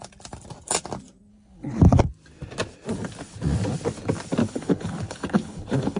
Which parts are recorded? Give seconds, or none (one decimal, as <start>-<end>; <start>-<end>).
0.0-1.3; 2.0-4.4